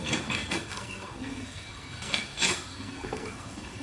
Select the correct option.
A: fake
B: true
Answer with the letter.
A